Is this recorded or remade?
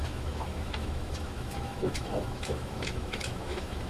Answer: remade